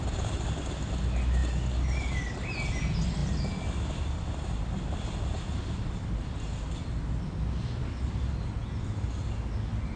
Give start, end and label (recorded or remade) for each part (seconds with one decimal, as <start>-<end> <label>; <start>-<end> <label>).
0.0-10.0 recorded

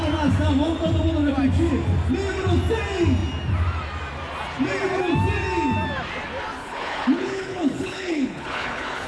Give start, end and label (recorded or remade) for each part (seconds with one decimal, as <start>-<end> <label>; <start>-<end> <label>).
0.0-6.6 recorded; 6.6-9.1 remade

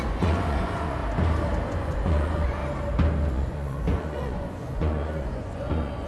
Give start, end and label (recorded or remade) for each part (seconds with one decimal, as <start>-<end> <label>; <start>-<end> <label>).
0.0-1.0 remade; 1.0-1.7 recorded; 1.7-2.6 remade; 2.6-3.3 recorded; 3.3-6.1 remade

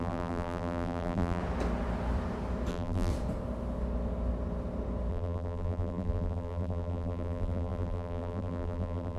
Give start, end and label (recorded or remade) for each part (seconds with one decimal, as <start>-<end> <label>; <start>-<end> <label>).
0.0-1.4 remade; 1.4-2.7 recorded; 2.7-3.1 remade; 3.1-5.1 recorded; 5.1-9.2 remade

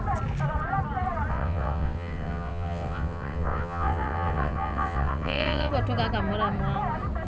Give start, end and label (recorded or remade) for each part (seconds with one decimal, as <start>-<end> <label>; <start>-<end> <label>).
0.0-1.3 recorded; 1.3-5.7 remade; 5.7-7.3 recorded